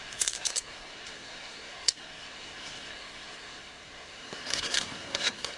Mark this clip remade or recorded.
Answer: remade